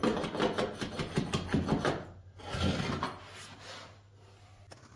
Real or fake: real